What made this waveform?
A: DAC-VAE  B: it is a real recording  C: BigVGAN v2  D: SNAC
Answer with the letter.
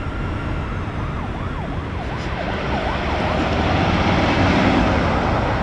B